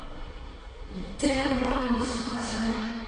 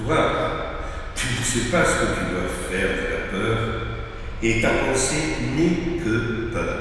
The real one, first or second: second